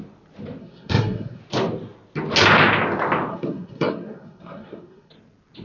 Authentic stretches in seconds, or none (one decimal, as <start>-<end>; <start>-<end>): 0.0-0.6; 1.4-3.3; 5.1-5.6